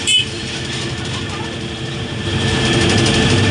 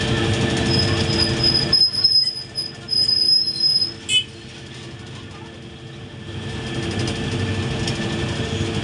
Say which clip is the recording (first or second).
second